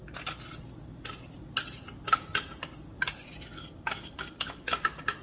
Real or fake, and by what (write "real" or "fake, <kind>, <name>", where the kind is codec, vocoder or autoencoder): real